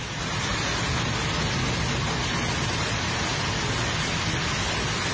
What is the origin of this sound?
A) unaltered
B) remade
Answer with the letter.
A